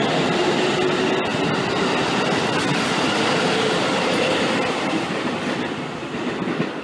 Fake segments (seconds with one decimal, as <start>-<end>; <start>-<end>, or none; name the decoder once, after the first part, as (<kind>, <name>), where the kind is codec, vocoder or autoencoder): none